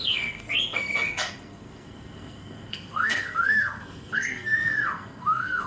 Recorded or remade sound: remade